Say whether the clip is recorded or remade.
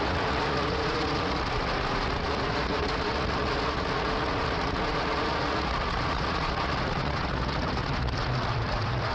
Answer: remade